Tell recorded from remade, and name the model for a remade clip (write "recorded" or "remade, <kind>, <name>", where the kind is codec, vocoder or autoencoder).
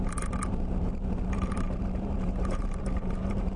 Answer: remade, vocoder, BigVGAN v2